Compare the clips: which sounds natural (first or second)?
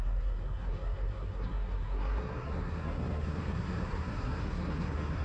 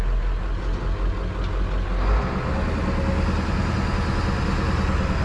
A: second